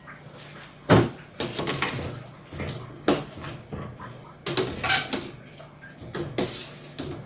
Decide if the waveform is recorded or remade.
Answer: recorded